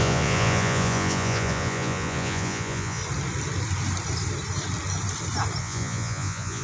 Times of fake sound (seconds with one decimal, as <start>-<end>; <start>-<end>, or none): 0.0-3.0; 5.6-6.6